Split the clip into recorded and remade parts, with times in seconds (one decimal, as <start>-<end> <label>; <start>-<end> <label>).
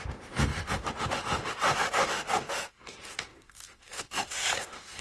0.0-5.0 remade